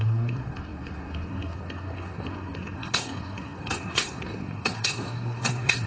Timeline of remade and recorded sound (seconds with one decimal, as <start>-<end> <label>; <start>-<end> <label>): 0.0-5.9 remade

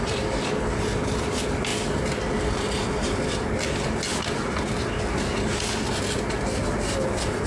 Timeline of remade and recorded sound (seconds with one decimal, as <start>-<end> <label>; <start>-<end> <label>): 0.0-7.5 recorded

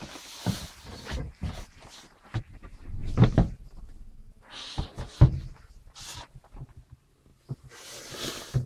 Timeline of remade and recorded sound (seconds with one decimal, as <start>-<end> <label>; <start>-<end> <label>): 0.0-8.7 recorded

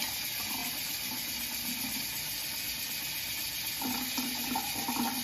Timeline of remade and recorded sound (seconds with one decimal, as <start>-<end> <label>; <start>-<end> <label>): 0.0-5.2 recorded

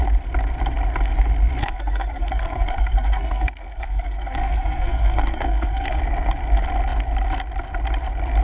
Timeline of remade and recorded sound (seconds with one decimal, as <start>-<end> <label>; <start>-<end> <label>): 0.0-1.6 recorded; 1.6-6.0 remade; 6.0-8.4 recorded

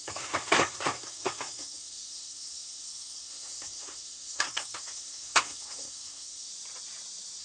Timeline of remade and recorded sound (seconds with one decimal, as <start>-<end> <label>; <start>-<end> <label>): 0.0-6.5 remade; 6.5-7.4 recorded